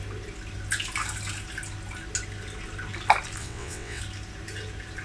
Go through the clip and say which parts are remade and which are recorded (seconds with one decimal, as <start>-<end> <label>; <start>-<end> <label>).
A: 0.0-3.4 recorded; 3.4-4.0 remade; 4.0-5.0 recorded